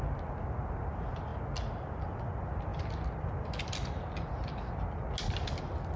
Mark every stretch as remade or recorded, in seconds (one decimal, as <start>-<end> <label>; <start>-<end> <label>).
0.0-6.0 recorded